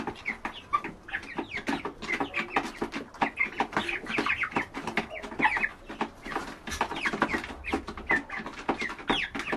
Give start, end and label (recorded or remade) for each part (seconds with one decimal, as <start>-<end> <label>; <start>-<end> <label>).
0.0-6.4 recorded; 6.4-7.7 remade; 7.7-8.5 recorded; 8.5-9.6 remade